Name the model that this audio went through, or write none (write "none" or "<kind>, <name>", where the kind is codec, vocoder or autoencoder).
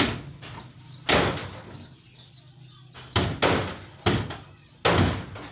none